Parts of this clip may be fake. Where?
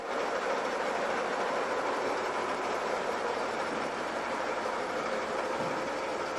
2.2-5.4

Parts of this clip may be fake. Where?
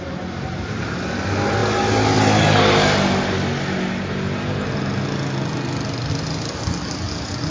none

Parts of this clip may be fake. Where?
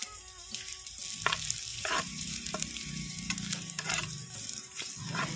0.0-1.0; 1.7-4.9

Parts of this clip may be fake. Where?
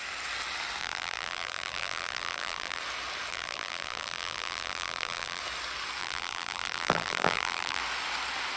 0.8-2.8; 3.3-5.4; 6.0-7.8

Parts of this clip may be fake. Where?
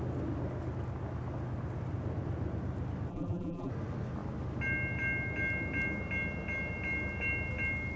3.1-3.7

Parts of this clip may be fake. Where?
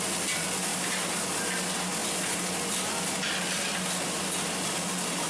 0.7-1.2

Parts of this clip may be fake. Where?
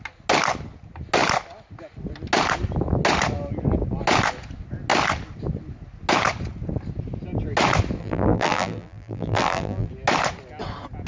8.0-9.9